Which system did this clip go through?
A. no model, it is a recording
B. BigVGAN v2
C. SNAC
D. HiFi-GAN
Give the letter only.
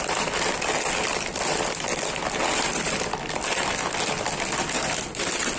A